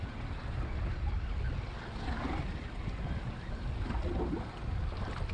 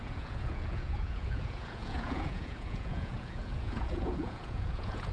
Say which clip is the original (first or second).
first